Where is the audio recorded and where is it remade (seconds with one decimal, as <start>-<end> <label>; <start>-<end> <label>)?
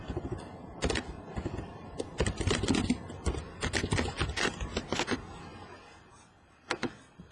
0.0-7.3 recorded